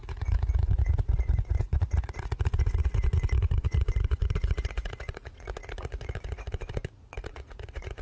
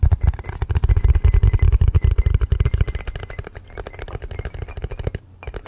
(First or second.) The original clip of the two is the second